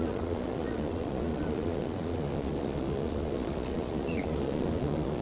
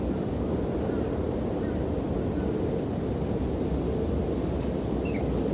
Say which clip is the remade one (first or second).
first